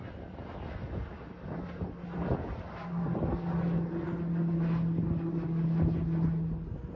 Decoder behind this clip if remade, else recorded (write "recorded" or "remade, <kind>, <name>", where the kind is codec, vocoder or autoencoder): recorded